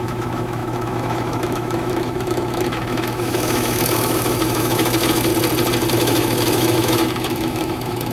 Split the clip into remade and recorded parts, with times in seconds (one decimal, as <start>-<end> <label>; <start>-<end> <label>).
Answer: 0.0-5.3 remade; 5.3-5.9 recorded; 5.9-8.1 remade